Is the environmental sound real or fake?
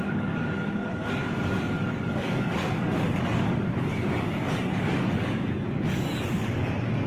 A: fake